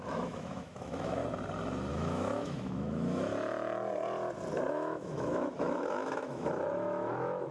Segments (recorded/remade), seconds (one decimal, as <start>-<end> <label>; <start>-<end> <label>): 0.0-1.2 remade; 1.2-1.9 recorded; 1.9-3.3 remade; 3.3-4.7 recorded; 4.7-7.5 remade